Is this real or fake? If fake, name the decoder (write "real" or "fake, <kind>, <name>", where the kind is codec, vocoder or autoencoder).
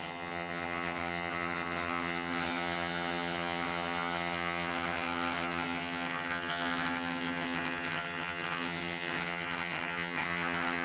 fake, vocoder, HiFi-GAN